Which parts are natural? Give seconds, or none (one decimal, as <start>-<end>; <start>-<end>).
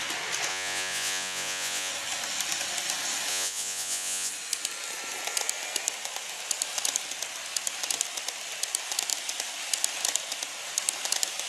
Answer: 0.0-0.5; 1.9-3.3; 4.3-11.5